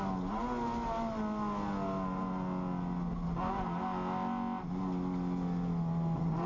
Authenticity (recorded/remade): recorded